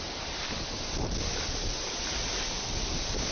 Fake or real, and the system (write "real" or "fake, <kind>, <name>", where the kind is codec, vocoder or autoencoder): real